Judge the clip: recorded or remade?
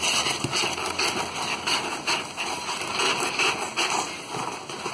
recorded